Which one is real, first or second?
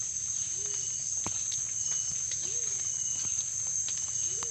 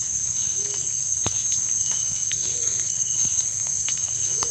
first